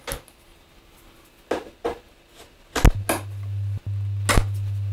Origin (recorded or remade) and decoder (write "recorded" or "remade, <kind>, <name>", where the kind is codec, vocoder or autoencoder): recorded